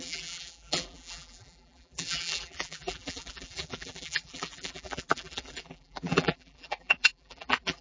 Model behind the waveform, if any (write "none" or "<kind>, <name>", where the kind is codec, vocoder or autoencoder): vocoder, BigVGAN v2